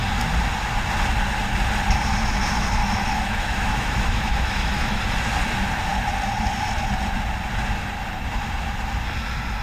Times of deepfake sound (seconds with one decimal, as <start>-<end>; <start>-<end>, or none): 2.8-5.0